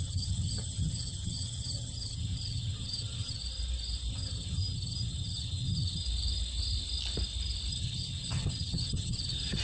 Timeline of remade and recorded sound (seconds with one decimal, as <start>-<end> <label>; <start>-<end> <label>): 0.0-3.4 remade; 3.4-4.1 recorded; 4.1-6.0 remade; 6.0-7.7 recorded; 7.7-9.6 remade